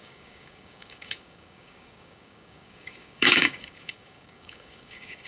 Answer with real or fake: fake